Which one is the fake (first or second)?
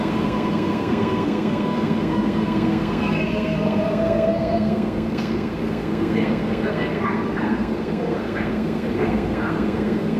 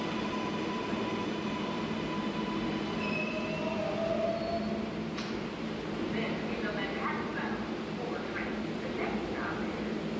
first